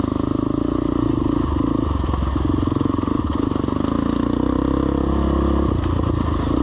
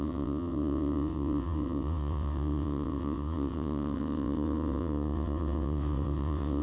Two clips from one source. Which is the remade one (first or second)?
second